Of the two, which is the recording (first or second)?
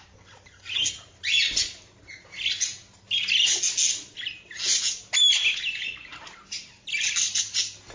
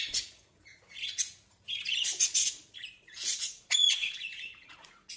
first